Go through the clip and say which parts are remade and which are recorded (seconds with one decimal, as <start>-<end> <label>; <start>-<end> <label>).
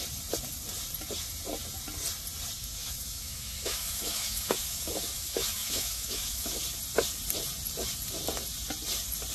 0.0-2.6 recorded; 2.6-6.6 remade; 6.6-9.3 recorded